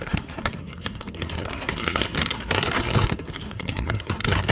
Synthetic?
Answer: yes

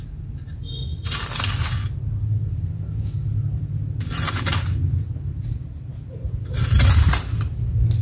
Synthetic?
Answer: no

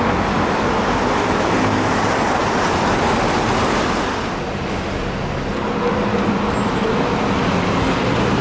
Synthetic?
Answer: no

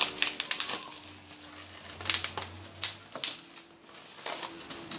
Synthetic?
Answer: no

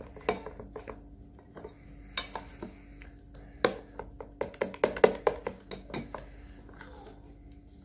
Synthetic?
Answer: no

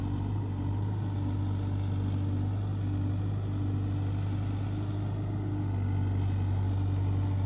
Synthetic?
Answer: no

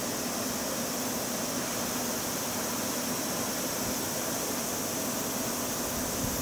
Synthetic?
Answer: no